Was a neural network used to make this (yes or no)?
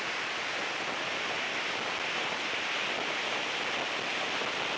no